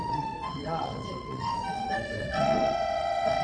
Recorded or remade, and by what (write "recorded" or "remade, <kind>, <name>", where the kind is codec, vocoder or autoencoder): remade, vocoder, WaveNeXt